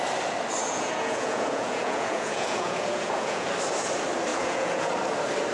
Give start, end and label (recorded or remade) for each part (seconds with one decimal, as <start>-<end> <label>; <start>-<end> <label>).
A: 0.0-0.6 recorded; 0.6-3.5 remade; 3.5-4.3 recorded; 4.3-4.9 remade; 4.9-5.5 recorded